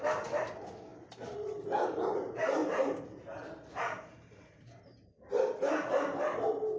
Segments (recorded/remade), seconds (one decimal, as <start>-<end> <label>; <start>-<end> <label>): 0.0-0.9 recorded; 0.9-2.2 remade; 2.2-2.6 recorded; 2.6-5.3 remade; 5.3-6.8 recorded